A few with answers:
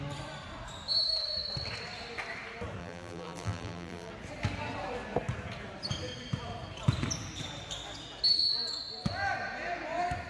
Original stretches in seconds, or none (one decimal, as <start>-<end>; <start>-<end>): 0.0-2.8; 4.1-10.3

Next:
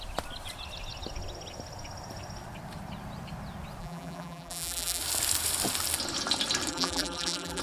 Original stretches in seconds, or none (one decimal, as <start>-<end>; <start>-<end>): 0.0-3.8; 5.0-6.7

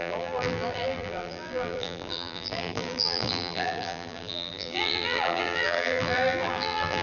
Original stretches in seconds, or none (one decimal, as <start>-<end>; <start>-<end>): none

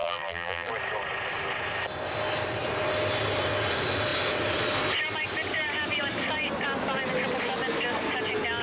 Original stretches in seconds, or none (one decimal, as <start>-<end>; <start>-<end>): 0.7-8.6

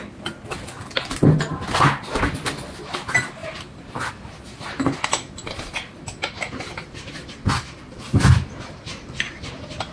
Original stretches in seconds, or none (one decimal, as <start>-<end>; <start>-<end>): 0.0-3.4; 4.1-5.4; 8.4-9.9